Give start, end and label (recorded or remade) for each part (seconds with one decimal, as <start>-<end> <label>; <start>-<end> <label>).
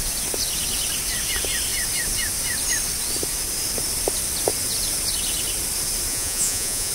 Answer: 0.0-6.1 recorded; 6.1-6.9 remade